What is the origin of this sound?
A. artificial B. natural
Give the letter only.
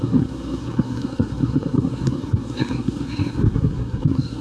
A